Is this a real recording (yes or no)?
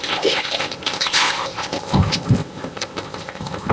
no